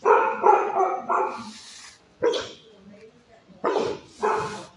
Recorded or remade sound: remade